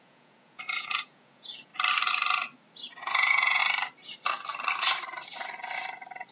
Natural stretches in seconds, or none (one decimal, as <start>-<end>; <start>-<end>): 1.7-3.0; 3.6-6.3